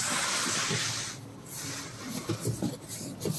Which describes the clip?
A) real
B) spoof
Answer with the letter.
B